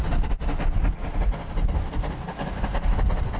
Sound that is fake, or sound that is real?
real